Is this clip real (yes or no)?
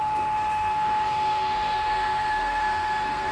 no